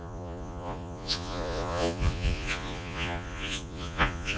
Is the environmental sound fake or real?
fake